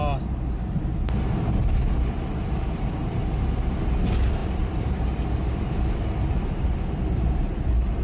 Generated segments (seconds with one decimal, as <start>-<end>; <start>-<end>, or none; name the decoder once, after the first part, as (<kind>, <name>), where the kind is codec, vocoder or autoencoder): 4.4-6.6 (vocoder, BigVGAN v2)